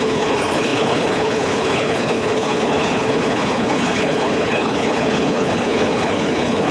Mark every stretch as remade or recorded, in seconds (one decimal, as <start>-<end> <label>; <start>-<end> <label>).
0.0-6.7 remade